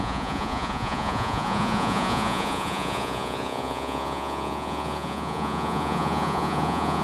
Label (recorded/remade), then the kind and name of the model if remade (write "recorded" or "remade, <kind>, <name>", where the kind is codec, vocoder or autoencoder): remade, vocoder, Vocos